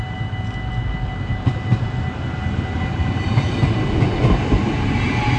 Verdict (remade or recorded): recorded